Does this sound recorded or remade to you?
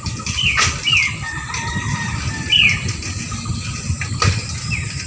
recorded